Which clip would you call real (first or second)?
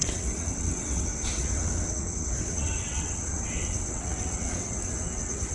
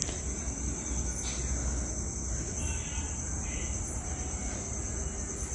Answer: second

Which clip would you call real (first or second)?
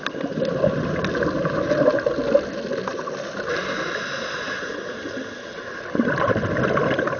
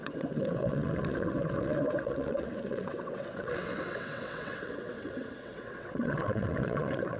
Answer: first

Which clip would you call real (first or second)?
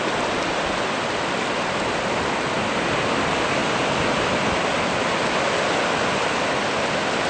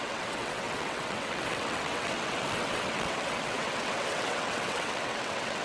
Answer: first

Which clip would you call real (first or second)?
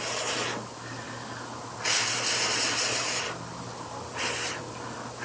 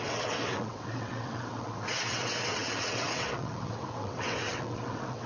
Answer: first